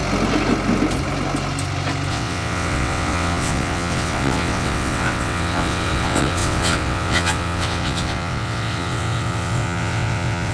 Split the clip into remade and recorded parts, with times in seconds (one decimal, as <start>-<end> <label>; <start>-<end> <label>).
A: 0.0-2.1 recorded; 2.1-10.5 remade